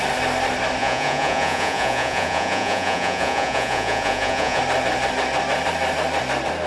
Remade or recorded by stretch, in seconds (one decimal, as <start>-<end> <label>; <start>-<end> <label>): 0.0-0.8 recorded; 0.8-4.6 remade; 4.6-6.7 recorded